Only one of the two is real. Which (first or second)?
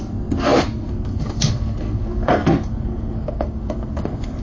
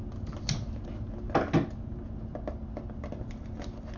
second